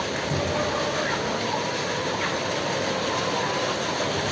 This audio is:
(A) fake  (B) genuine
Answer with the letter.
B